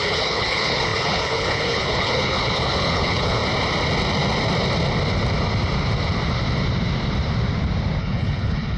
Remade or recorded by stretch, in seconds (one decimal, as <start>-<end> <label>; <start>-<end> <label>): 0.0-3.4 remade; 3.4-8.0 recorded; 8.0-8.8 remade